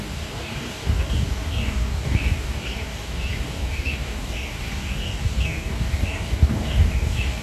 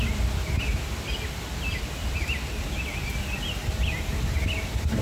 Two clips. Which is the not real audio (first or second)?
first